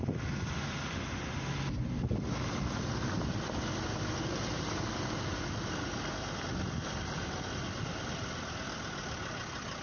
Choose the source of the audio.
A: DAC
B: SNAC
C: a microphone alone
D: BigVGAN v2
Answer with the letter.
C